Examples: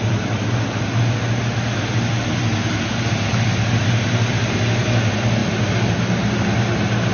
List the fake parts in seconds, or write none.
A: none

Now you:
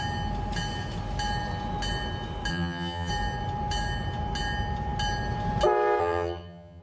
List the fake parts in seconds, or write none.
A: 2.5-3.1; 6.0-6.8

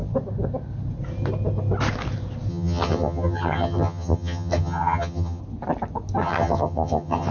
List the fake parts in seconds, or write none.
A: 2.5-5.4; 6.2-7.3